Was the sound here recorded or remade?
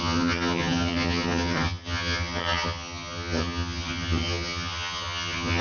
remade